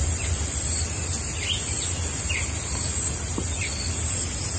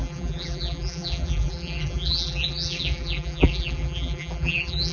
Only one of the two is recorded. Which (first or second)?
first